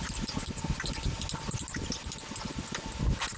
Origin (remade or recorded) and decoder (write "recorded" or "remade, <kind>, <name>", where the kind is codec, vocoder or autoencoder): recorded